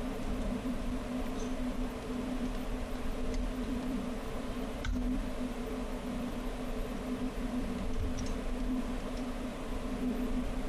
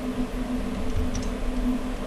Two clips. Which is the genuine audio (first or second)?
second